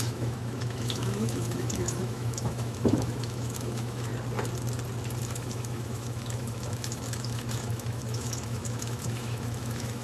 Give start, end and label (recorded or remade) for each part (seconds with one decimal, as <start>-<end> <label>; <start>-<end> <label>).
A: 0.0-4.1 remade; 4.1-5.2 recorded; 5.2-10.0 remade